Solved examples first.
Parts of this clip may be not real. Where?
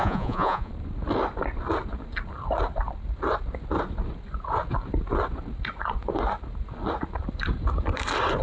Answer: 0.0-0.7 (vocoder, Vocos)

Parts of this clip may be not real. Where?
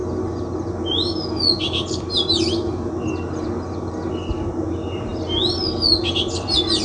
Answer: none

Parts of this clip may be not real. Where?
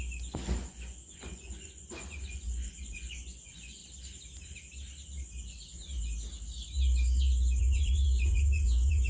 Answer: 0.0-3.8 (vocoder, Vocos); 7.6-9.1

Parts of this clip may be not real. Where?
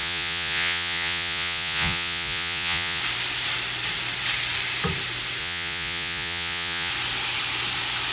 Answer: 0.0-3.0 (vocoder, Vocos); 5.4-6.9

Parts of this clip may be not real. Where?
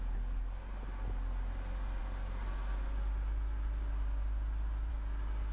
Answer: none